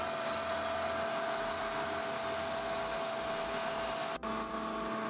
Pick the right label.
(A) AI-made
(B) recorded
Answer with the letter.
B